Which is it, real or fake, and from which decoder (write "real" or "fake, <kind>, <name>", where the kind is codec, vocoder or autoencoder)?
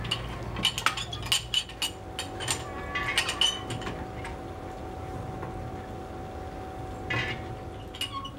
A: real